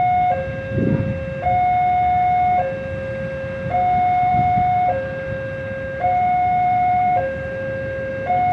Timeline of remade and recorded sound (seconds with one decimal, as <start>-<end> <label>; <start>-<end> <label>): 0.0-4.3 recorded; 4.3-8.1 remade; 8.1-8.5 recorded